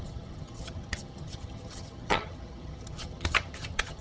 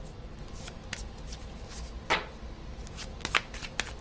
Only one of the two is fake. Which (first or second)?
first